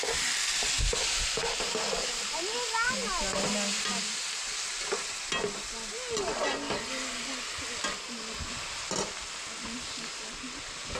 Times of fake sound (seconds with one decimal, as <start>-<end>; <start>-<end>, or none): none